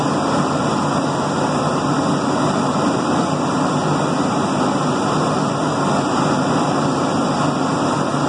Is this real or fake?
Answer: real